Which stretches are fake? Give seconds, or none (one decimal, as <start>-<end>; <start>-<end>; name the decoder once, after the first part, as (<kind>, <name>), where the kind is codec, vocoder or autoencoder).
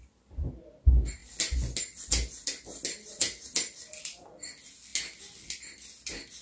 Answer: none